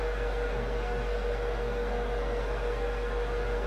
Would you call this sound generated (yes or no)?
yes